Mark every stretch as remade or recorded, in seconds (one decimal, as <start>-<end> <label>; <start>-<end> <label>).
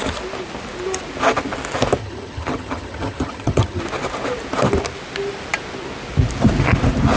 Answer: 0.0-2.0 recorded; 2.0-3.8 remade; 3.8-7.2 recorded